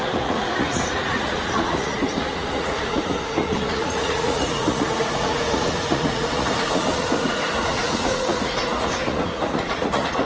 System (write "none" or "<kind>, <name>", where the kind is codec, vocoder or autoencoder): vocoder, Vocos